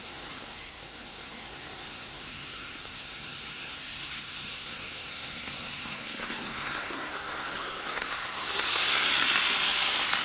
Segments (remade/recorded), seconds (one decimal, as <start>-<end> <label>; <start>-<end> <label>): 0.0-9.1 remade; 9.1-10.2 recorded